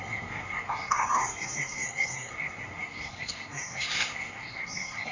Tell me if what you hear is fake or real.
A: fake